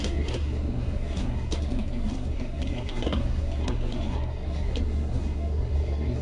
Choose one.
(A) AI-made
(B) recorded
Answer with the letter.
A